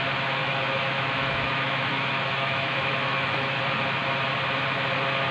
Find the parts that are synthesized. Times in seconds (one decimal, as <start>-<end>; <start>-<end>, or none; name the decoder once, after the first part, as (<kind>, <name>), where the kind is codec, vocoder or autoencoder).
0.4-3.6 (autoencoder, DAC-VAE)

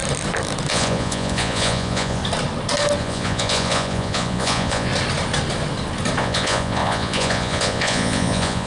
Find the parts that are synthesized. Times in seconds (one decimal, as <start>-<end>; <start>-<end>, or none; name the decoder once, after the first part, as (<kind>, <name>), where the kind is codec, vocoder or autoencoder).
0.7-2.2 (vocoder, Vocos); 3.0-4.9; 6.2-8.7

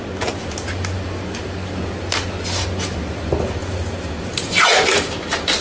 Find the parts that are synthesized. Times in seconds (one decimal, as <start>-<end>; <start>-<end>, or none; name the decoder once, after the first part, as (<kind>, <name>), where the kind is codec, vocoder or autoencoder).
none

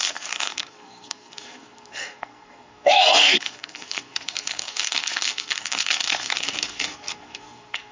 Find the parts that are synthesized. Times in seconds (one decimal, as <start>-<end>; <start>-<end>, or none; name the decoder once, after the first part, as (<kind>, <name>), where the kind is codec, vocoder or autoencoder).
0.0-7.9 (codec, SNAC)

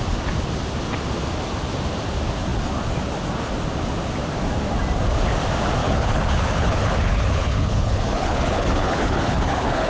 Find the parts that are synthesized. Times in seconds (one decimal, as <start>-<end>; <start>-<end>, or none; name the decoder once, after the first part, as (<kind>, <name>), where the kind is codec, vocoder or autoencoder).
5.8-9.9 (codec, HILCodec)